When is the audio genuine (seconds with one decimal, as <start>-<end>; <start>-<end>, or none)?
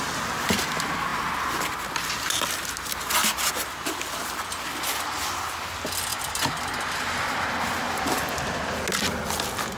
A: 0.0-6.1; 8.8-9.8